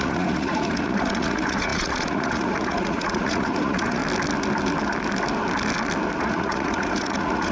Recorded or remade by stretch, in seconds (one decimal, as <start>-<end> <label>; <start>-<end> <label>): 0.0-4.0 remade; 4.0-6.2 recorded; 6.2-7.5 remade